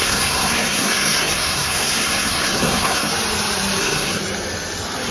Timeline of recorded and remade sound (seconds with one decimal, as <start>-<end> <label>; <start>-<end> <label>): 0.0-3.1 remade; 3.1-3.8 recorded; 3.8-4.2 remade; 4.2-5.1 recorded